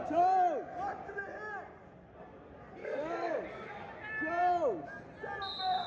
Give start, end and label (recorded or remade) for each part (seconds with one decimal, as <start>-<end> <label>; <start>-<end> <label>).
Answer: 0.0-2.8 recorded; 2.8-3.9 remade; 3.9-5.9 recorded

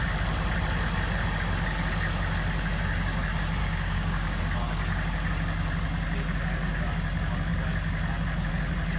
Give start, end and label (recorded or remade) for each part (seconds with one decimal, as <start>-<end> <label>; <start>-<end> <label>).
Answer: 0.0-3.6 recorded; 3.6-4.4 remade; 4.4-9.0 recorded

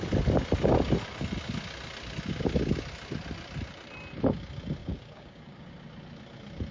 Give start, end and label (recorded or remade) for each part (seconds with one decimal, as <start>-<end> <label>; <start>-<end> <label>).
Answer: 0.0-4.8 recorded; 4.8-5.6 remade; 5.6-6.7 recorded

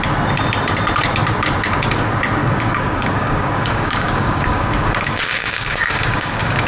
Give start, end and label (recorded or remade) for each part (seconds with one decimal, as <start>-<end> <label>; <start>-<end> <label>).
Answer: 0.0-2.4 recorded; 2.4-6.7 remade

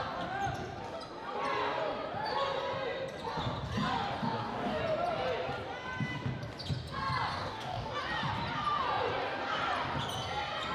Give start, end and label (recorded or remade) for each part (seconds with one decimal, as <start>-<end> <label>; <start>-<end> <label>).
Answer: 0.0-4.2 recorded; 4.2-4.8 remade; 4.8-7.3 recorded; 7.3-7.9 remade; 7.9-10.7 recorded

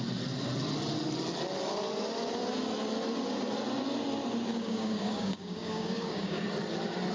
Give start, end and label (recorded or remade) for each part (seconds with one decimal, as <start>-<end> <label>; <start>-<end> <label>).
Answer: 0.0-4.5 recorded; 4.5-6.4 remade; 6.4-7.1 recorded